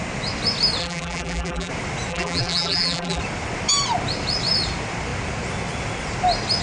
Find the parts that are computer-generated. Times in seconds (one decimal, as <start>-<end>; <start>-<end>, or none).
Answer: 0.8-1.7; 2.1-3.2